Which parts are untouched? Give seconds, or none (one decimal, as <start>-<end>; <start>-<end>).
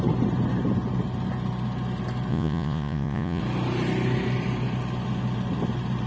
0.0-2.3; 3.4-6.1